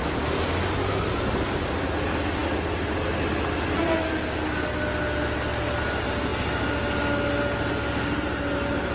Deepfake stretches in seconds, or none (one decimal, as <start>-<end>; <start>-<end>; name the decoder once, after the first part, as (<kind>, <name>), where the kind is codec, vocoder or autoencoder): none